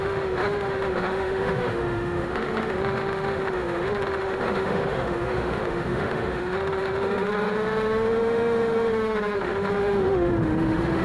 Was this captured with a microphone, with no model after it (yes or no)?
no